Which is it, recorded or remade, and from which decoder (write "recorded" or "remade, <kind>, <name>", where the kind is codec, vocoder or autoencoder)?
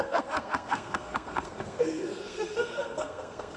remade, codec, SNAC